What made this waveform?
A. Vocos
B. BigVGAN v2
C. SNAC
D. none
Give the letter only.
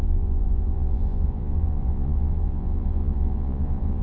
A